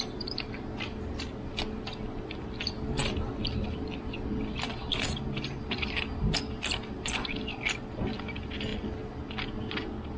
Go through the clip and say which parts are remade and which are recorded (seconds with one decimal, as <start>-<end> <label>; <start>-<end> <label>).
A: 0.0-10.2 recorded